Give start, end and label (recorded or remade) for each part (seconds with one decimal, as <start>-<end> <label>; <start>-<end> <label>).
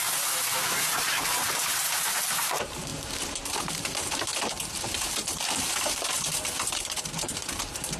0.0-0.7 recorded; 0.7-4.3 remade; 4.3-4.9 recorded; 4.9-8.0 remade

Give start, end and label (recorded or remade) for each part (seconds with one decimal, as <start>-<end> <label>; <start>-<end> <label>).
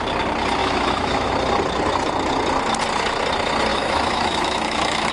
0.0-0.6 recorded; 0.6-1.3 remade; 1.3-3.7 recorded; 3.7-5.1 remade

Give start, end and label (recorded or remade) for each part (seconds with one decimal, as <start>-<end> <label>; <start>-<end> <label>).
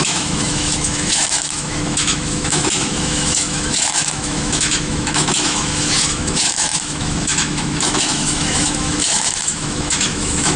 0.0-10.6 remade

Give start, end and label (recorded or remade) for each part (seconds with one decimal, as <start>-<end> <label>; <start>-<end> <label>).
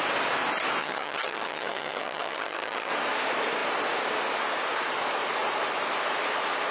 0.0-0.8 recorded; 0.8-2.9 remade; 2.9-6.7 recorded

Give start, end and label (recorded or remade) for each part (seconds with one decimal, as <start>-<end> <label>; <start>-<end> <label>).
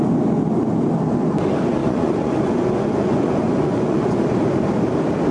0.0-1.8 recorded; 1.8-4.2 remade; 4.2-5.3 recorded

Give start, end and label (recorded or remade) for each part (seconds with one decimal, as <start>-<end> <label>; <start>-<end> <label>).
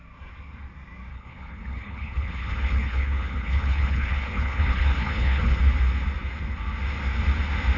0.0-1.1 recorded; 1.1-5.6 remade; 5.6-7.8 recorded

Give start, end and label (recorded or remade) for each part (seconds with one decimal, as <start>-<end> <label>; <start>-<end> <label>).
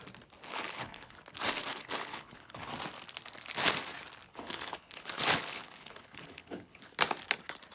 0.0-0.4 recorded; 0.4-1.2 remade; 1.2-1.7 recorded; 1.7-2.7 remade; 2.7-4.3 recorded; 4.3-6.9 remade; 6.9-7.7 recorded